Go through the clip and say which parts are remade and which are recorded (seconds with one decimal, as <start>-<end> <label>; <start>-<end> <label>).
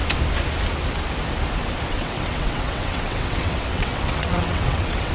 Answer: 0.0-1.9 recorded; 1.9-5.1 remade